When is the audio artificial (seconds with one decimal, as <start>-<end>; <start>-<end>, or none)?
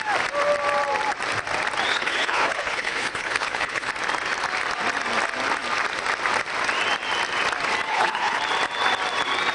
1.9-3.9; 7.9-8.4